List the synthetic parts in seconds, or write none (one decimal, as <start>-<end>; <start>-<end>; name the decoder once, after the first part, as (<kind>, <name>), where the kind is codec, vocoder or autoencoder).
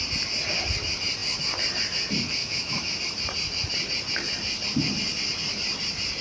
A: 2.4-3.0 (autoencoder, DAC-VAE)